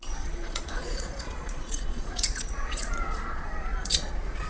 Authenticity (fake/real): fake